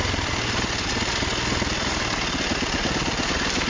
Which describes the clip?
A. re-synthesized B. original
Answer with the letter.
B